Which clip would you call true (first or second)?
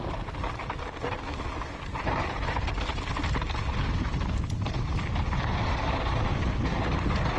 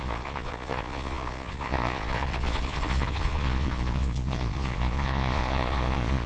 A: first